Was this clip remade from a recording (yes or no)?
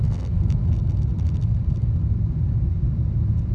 no